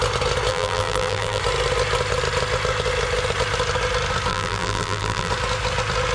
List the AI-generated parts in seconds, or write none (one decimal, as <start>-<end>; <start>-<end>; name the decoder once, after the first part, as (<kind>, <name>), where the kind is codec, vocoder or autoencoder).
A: 0.5-1.4 (vocoder, BigVGAN v2); 4.3-5.3